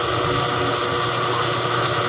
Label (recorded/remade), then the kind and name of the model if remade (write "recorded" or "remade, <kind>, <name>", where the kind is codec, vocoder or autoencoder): recorded